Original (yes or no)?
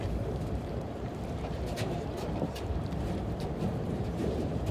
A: no